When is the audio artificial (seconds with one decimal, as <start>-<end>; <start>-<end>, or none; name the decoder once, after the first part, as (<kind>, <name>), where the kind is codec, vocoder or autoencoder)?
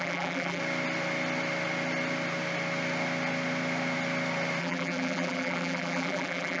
0.0-0.6 (vocoder, BigVGAN v2); 4.6-6.6